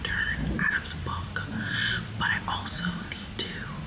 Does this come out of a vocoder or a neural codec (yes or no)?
no